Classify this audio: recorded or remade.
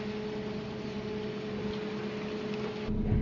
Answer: recorded